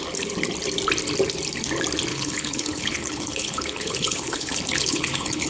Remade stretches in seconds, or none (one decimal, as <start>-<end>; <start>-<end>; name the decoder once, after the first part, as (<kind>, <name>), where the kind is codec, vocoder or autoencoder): 2.1-5.5 (codec, HILCodec)